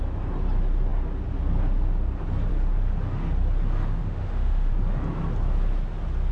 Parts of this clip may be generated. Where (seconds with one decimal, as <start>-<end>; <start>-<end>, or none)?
4.0-4.7